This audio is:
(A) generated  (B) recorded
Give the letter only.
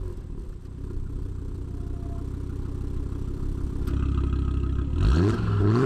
B